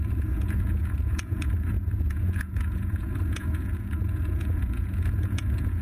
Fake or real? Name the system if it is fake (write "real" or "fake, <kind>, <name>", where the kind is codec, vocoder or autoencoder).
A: fake, vocoder, Vocos